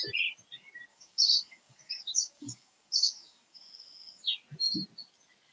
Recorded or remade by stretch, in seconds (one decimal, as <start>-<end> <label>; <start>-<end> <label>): 0.0-0.9 recorded; 0.9-4.2 remade; 4.2-5.5 recorded